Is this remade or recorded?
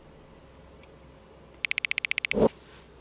recorded